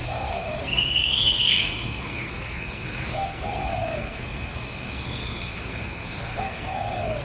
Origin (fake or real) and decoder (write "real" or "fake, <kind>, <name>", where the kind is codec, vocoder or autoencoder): fake, codec, SNAC